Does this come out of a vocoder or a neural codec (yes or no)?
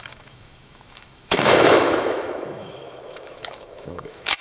yes